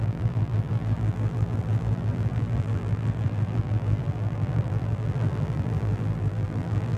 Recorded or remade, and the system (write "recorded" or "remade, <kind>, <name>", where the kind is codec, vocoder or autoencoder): remade, vocoder, BigVGAN v2